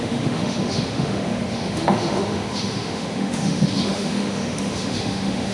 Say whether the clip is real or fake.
fake